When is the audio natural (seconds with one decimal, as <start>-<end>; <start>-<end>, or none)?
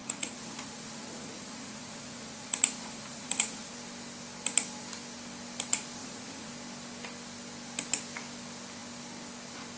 3.7-6.0; 6.5-9.8